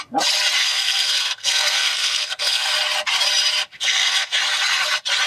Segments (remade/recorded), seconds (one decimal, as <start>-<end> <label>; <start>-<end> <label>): 0.0-0.6 recorded; 0.6-2.7 remade; 2.7-3.8 recorded; 3.8-4.4 remade; 4.4-5.3 recorded

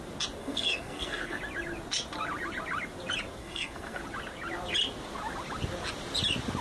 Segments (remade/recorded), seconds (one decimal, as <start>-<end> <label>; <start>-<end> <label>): 0.0-0.4 recorded; 0.4-1.4 remade; 1.4-3.4 recorded; 3.4-4.0 remade; 4.0-6.6 recorded

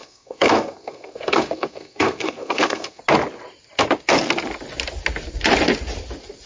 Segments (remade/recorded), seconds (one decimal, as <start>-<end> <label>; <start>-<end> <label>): 0.0-3.0 remade; 3.0-6.5 recorded

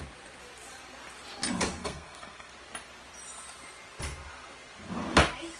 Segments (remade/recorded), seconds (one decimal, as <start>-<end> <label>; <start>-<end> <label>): 0.0-1.8 recorded; 1.8-2.5 remade; 2.5-5.6 recorded

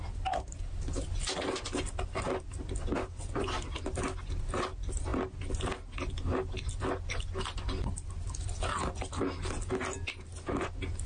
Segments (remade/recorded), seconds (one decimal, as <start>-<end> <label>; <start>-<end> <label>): 0.0-11.1 recorded

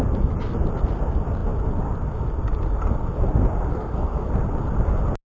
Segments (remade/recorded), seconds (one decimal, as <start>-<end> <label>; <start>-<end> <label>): 0.0-3.7 recorded; 3.7-4.3 remade; 4.3-5.3 recorded

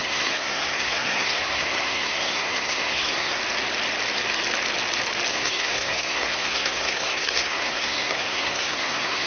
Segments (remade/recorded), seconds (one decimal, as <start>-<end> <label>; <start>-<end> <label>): 0.0-3.4 remade; 3.4-5.3 recorded; 5.3-9.3 remade

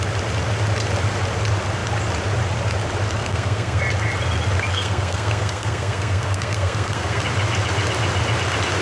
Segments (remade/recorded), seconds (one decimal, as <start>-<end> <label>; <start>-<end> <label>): 0.0-3.2 recorded; 3.2-3.8 remade; 3.8-4.7 recorded; 4.7-7.2 remade; 7.2-8.8 recorded